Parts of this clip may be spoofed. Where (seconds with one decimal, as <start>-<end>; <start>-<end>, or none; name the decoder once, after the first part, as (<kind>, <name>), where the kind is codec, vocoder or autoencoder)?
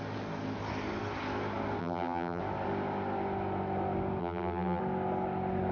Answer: 1.8-2.4 (vocoder, BigVGAN v2); 4.2-4.8